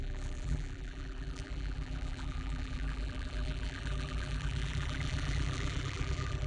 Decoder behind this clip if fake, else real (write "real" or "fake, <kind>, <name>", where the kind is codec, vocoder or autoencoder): fake, vocoder, BigVGAN v2